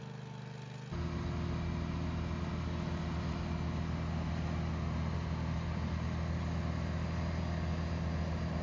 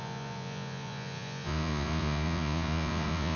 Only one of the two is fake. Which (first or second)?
second